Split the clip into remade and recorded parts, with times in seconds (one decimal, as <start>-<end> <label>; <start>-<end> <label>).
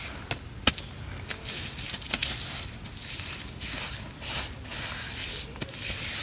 0.0-6.2 recorded